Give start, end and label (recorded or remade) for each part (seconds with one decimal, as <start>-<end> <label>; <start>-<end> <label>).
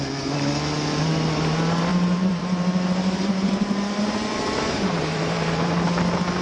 0.0-1.9 recorded; 1.9-5.7 remade; 5.7-6.4 recorded